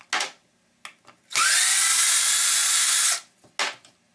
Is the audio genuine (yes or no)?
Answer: yes